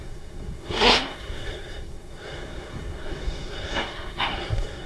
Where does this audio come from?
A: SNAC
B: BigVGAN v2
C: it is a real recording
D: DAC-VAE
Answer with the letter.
A